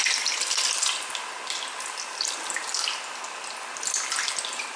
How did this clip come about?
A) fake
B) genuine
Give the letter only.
B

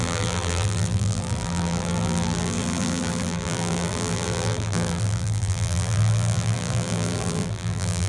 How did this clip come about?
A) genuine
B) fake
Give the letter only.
B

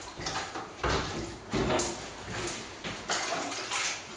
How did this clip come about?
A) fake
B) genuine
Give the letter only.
B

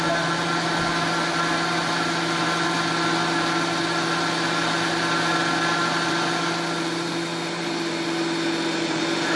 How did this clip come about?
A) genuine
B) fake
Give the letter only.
A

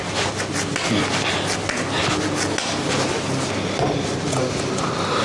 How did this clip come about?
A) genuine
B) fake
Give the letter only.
A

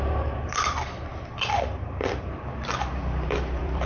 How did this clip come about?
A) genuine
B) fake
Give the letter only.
B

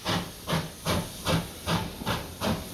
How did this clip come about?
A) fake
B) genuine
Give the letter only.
B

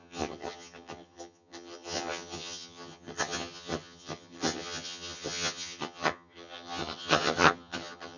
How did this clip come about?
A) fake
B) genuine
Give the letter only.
A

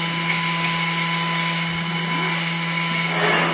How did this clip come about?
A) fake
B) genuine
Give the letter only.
B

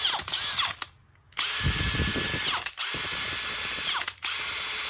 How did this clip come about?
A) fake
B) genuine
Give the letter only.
B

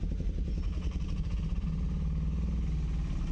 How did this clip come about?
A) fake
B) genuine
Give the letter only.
B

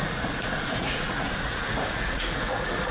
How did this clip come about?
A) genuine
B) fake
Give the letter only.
B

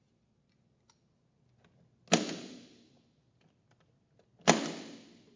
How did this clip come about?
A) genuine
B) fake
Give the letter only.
A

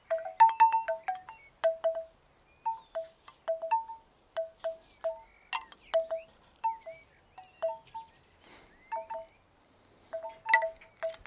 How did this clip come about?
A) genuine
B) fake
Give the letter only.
A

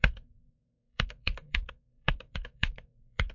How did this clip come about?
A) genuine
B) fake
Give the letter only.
B